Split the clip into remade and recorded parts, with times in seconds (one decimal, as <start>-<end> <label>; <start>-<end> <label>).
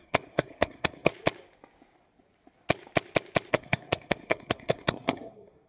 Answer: 0.0-1.1 remade; 1.1-3.5 recorded; 3.5-5.7 remade